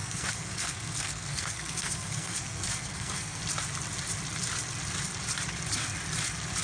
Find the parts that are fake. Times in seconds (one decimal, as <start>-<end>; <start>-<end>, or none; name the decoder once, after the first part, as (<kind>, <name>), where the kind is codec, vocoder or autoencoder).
0.0-3.4 (codec, SNAC)